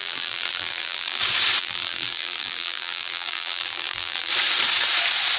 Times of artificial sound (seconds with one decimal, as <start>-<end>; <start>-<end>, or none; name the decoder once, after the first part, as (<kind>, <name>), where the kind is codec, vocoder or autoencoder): 0.0-1.2 (vocoder, BigVGAN v2); 1.6-4.3